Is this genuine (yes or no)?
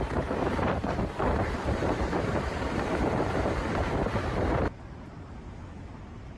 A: no